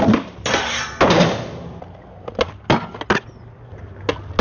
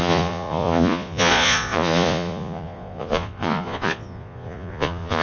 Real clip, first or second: first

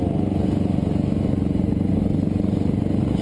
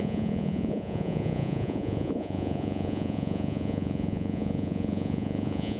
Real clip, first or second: first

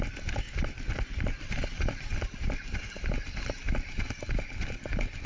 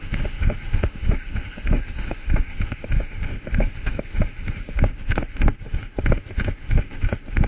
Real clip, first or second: first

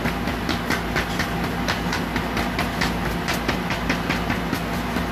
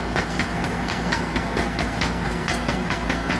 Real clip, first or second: first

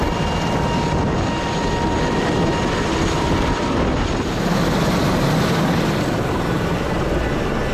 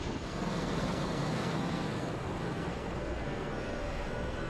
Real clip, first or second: first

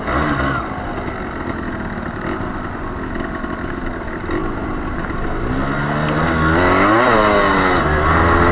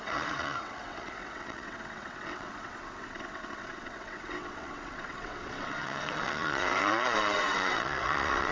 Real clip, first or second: first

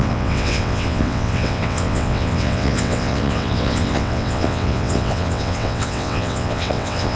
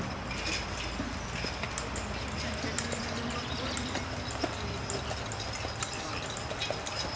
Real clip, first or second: second